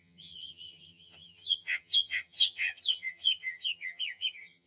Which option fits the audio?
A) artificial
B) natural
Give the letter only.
A